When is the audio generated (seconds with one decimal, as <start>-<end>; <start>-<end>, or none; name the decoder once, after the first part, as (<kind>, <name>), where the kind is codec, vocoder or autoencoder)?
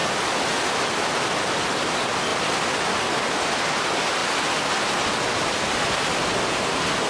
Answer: 2.3-2.9 (vocoder, BigVGAN v2)